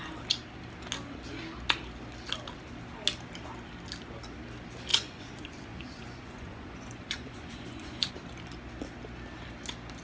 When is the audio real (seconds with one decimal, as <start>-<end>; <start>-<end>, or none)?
0.0-4.9; 8.1-10.0